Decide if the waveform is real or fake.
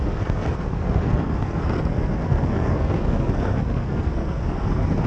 fake